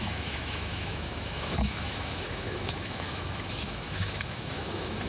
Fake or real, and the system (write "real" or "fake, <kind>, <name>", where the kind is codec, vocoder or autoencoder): fake, autoencoder, DAC-VAE